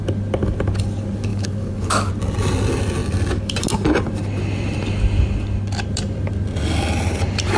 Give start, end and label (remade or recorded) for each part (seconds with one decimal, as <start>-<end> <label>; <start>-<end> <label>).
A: 0.0-1.3 recorded; 1.3-2.1 remade; 2.1-7.6 recorded